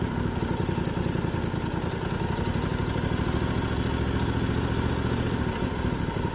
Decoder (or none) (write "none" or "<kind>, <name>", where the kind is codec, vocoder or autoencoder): none